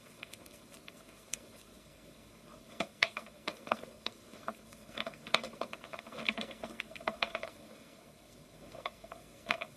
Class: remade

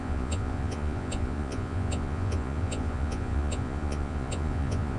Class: remade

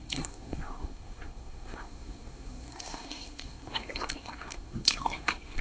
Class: remade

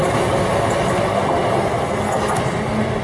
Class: recorded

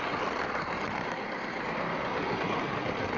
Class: recorded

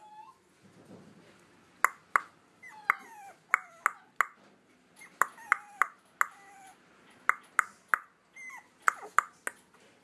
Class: recorded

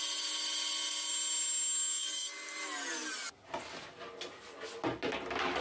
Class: recorded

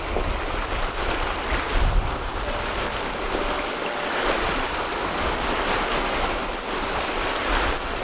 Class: recorded